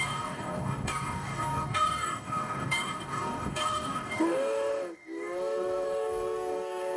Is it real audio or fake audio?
fake